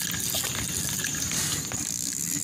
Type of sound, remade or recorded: recorded